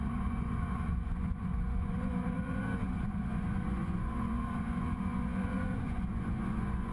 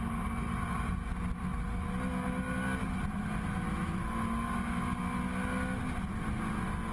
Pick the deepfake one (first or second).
first